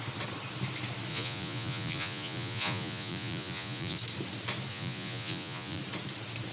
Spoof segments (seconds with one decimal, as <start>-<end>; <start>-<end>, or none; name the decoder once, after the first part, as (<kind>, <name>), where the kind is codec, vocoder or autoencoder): 1.1-4.0 (vocoder, Vocos); 4.7-5.8